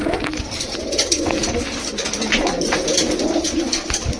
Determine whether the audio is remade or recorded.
remade